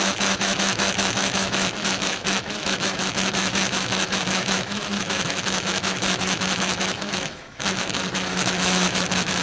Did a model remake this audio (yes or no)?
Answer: yes